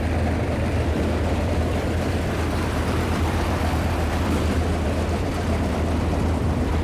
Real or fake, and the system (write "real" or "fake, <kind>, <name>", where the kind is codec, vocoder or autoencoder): fake, vocoder, BigVGAN v2